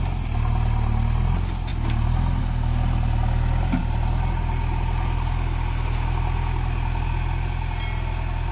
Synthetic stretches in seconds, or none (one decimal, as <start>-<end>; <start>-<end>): none